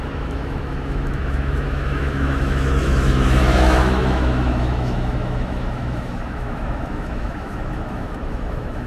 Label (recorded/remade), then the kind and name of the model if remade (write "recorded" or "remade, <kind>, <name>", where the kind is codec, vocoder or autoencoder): remade, autoencoder, DAC-VAE